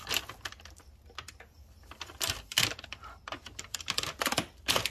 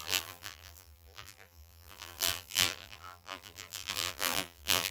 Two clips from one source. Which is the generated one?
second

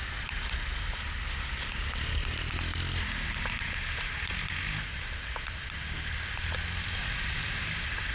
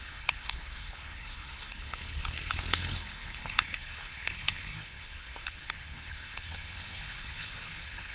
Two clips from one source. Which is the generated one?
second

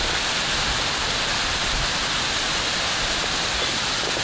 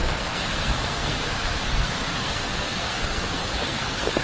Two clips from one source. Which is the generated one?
second